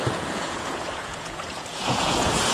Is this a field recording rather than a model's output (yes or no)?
no